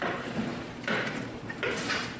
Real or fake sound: fake